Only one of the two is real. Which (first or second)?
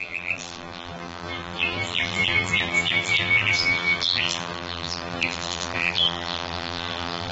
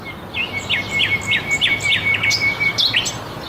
second